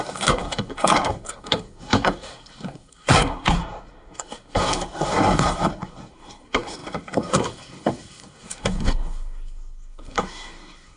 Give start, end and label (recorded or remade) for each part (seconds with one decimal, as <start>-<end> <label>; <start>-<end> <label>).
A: 0.0-11.0 remade